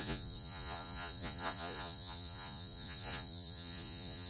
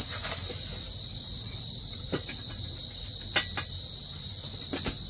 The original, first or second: second